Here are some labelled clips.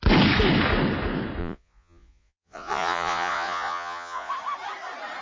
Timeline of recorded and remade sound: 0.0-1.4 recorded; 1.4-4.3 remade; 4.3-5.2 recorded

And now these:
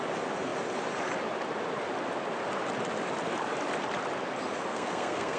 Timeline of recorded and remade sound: 0.0-4.7 recorded; 4.7-5.4 remade

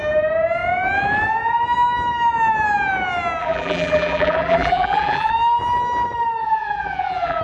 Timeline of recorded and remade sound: 0.0-3.4 recorded; 3.4-5.3 remade; 5.3-6.4 recorded; 6.4-7.4 remade

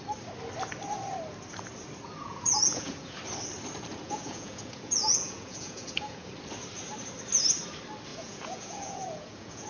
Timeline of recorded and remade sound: 0.0-2.2 recorded; 2.2-3.2 remade; 3.2-3.9 recorded; 3.9-6.3 remade; 6.3-8.1 recorded; 8.1-9.7 remade

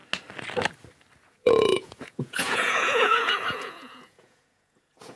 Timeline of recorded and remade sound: 0.0-1.2 recorded; 1.2-5.2 remade

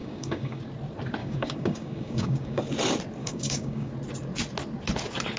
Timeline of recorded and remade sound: 0.0-0.6 remade; 0.6-1.2 recorded; 1.2-2.6 remade; 2.6-3.2 recorded; 3.2-3.9 remade; 3.9-5.4 recorded

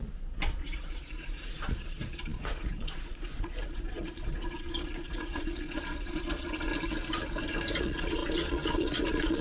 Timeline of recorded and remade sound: 0.0-6.7 remade; 6.7-7.8 recorded; 7.8-9.4 remade

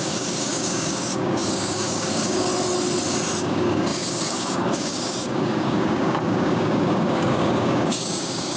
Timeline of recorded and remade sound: 0.0-2.5 remade; 2.5-3.4 recorded; 3.4-8.6 remade